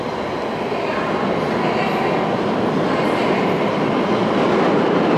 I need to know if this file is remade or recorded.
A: recorded